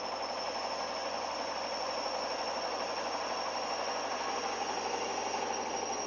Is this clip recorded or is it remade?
remade